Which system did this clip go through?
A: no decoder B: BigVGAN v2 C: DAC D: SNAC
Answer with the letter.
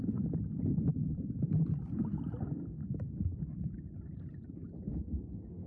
B